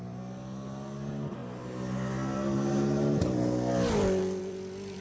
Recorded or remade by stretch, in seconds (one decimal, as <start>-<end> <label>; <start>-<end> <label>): 0.0-5.0 recorded